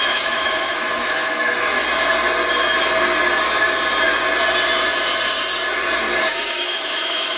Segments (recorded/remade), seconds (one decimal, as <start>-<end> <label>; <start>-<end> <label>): 0.0-1.8 remade; 1.8-6.2 recorded; 6.2-7.4 remade